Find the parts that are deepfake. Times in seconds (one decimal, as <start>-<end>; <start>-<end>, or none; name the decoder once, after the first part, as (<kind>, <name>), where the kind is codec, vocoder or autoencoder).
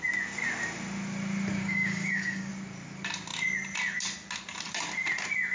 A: 1.6-2.5 (codec, DAC)